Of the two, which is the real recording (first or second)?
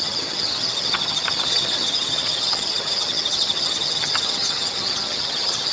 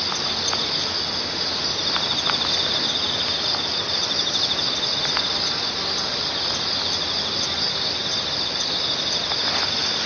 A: second